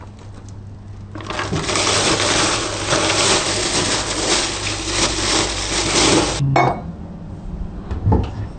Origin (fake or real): real